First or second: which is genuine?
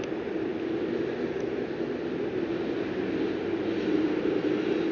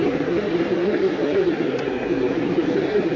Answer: first